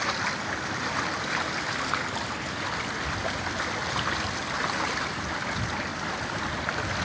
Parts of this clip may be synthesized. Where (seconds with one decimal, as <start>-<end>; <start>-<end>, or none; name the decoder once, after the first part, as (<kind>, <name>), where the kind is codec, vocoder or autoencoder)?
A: none